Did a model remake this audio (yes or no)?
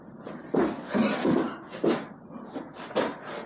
no